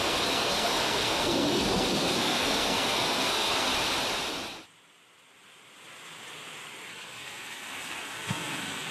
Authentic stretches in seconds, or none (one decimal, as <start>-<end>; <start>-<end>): 3.7-6.9